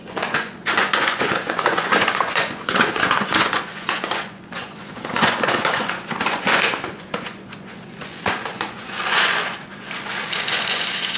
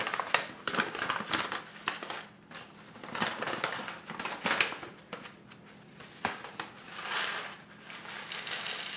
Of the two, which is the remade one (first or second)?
first